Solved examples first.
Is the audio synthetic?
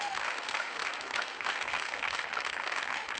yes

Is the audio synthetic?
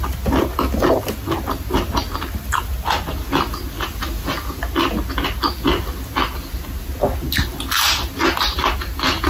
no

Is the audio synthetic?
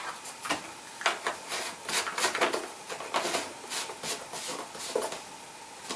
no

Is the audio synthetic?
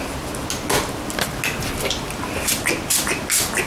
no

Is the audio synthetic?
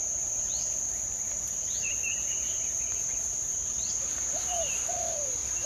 yes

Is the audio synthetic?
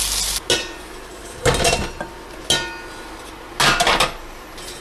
no